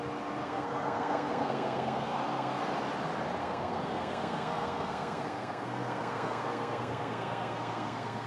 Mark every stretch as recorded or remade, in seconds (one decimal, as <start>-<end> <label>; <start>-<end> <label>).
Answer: 0.0-0.4 recorded; 0.4-2.7 remade; 2.7-3.4 recorded; 3.4-8.3 remade